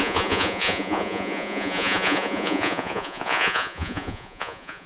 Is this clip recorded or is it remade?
remade